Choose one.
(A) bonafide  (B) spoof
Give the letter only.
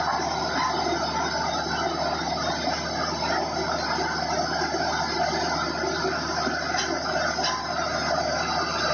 A